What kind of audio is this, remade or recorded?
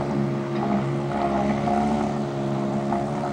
recorded